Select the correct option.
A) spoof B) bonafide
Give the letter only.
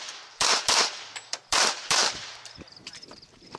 A